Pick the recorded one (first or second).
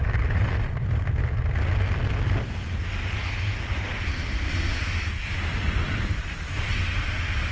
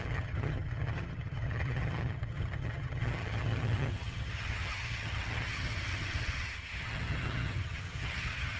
first